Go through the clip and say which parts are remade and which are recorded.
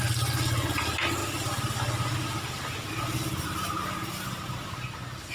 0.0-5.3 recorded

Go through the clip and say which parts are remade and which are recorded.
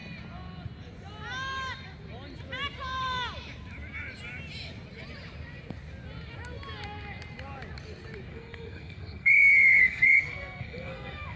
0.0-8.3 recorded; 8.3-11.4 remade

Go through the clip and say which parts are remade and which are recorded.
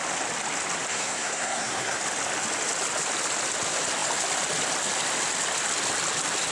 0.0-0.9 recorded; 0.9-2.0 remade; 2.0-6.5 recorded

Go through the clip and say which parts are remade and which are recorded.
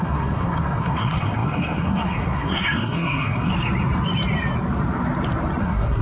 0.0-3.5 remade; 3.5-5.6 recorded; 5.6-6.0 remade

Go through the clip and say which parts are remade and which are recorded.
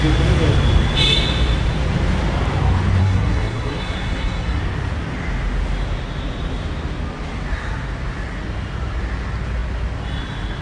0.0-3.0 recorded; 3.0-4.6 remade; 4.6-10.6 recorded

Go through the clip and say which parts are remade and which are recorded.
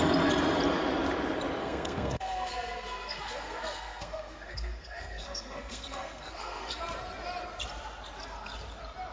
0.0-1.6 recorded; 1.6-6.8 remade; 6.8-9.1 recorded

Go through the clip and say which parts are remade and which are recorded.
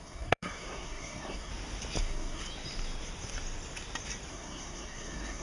0.0-1.5 remade; 1.5-2.0 recorded; 2.0-2.4 remade; 2.4-4.3 recorded; 4.3-5.4 remade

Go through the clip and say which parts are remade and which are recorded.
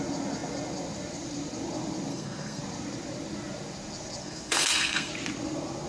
0.0-2.1 recorded; 2.1-2.6 remade; 2.6-4.2 recorded; 4.2-5.1 remade; 5.1-5.9 recorded